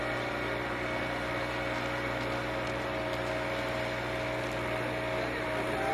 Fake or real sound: real